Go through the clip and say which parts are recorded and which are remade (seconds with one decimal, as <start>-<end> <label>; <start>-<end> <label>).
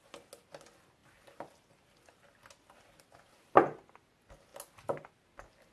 0.0-5.7 recorded